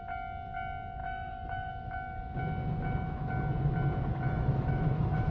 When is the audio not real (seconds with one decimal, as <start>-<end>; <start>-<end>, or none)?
1.0-1.7; 4.1-5.3